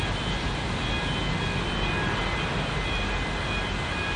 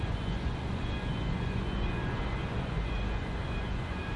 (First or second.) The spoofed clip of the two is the second